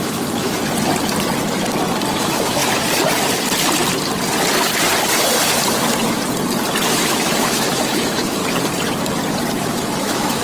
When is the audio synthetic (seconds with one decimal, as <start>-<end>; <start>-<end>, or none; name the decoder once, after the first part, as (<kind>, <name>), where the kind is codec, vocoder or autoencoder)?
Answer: 0.0-0.6 (autoencoder, DAC-VAE); 2.1-2.6; 6.9-8.4; 9.7-10.4